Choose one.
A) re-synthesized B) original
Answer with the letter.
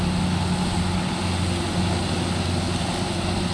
B